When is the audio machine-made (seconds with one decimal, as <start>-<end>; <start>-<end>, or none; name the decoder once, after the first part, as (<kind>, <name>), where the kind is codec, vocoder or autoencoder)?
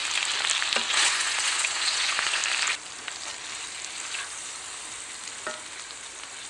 0.9-2.4 (vocoder, Vocos)